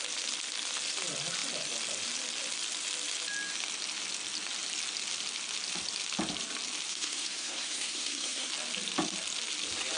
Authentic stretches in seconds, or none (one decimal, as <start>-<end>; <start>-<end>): 0.0-6.9; 8.5-10.0